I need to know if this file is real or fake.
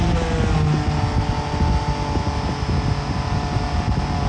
real